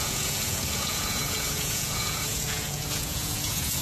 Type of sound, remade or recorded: remade